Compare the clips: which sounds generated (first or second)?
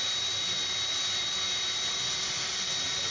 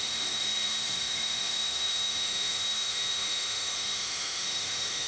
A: second